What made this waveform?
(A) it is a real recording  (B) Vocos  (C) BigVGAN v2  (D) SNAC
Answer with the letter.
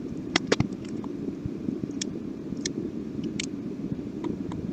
C